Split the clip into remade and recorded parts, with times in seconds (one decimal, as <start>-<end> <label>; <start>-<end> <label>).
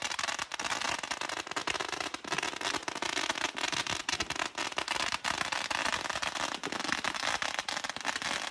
0.0-8.5 recorded